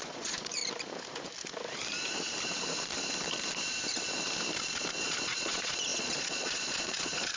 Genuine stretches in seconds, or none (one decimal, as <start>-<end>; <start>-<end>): 0.6-5.0